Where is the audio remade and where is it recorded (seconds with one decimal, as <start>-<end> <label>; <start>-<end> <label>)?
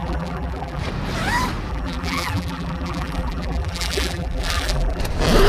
0.0-0.8 remade; 0.8-1.7 recorded; 1.7-5.0 remade; 5.0-5.5 recorded